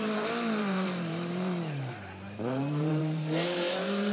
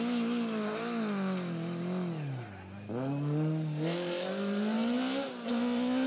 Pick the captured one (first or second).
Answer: second